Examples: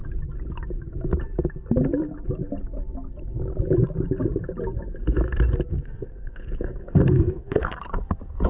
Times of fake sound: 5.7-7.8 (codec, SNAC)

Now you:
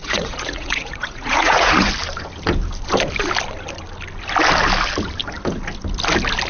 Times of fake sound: 0.0-1.9 (vocoder, Vocos)

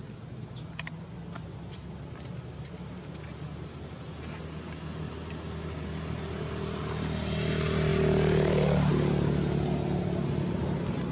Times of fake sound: none

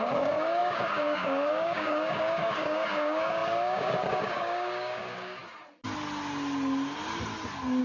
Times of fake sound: 0.0-5.4 (codec, DAC)

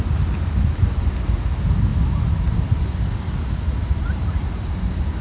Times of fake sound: none

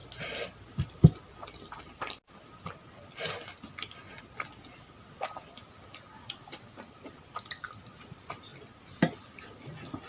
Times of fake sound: none